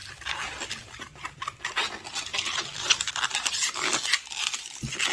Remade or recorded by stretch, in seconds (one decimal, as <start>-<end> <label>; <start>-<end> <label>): 0.0-5.1 recorded